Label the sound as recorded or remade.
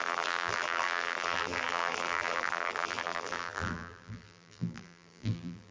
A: remade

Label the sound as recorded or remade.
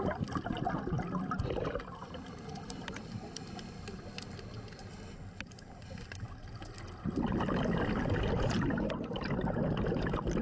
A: recorded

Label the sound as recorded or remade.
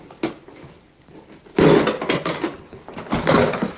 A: recorded